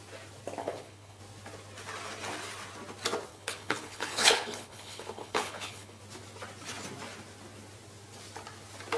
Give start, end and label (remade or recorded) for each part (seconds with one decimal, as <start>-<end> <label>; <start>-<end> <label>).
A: 0.0-0.6 recorded; 0.6-1.2 remade; 1.2-3.3 recorded; 3.3-6.0 remade; 6.0-9.0 recorded